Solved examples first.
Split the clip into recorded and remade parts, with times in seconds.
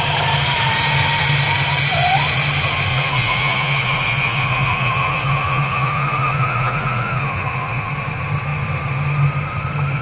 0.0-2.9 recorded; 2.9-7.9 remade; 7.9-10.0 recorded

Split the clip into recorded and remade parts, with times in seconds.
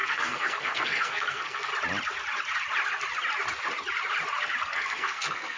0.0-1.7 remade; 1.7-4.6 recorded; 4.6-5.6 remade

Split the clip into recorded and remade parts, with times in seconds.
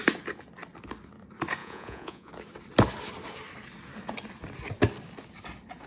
0.0-1.6 recorded; 1.6-2.3 remade; 2.3-5.9 recorded